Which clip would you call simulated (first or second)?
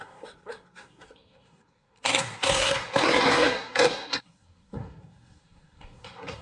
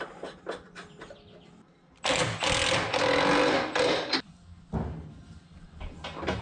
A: first